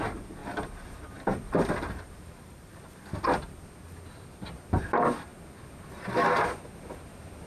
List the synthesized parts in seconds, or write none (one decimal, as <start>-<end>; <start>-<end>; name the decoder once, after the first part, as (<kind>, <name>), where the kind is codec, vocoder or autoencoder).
0.4-2.7 (vocoder, BigVGAN v2)